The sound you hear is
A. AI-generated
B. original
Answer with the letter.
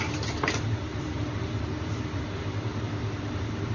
A